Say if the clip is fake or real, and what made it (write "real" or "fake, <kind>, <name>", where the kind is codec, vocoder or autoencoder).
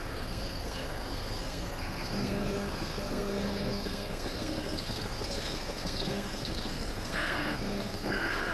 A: fake, codec, SNAC